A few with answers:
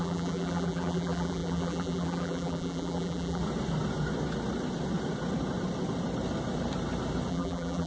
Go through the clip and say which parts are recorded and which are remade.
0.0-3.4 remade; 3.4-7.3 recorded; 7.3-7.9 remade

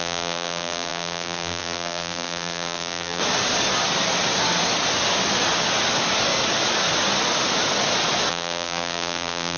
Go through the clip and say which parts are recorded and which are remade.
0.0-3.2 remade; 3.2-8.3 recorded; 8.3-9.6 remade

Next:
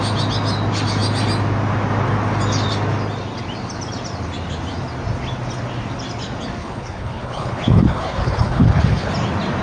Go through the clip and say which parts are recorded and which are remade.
0.0-6.6 recorded; 6.6-9.1 remade; 9.1-9.6 recorded

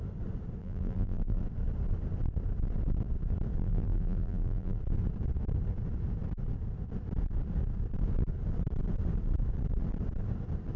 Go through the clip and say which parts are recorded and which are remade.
0.0-0.6 recorded; 0.6-1.4 remade; 1.4-3.6 recorded; 3.6-4.8 remade; 4.8-10.8 recorded

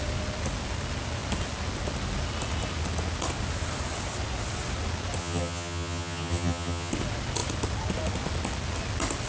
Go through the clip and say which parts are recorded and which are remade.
0.0-5.2 recorded; 5.2-6.9 remade; 6.9-9.3 recorded

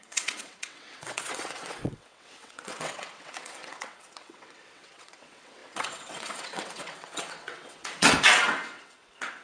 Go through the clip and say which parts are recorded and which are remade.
0.0-9.4 remade

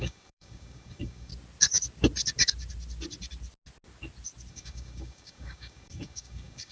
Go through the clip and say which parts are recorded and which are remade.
0.0-1.3 remade; 1.3-4.5 recorded; 4.5-6.7 remade